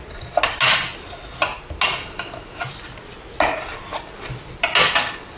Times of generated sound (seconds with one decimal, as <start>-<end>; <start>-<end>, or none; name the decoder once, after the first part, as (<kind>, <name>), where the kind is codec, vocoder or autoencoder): none